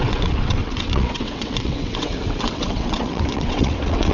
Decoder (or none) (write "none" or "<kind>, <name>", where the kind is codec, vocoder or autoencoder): vocoder, WaveNeXt